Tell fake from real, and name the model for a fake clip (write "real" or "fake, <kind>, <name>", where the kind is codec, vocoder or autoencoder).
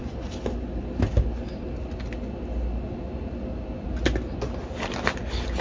real